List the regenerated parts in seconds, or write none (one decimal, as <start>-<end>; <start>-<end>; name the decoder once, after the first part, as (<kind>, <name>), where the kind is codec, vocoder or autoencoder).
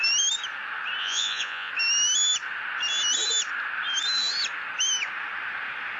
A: 1.0-1.7 (vocoder, Vocos)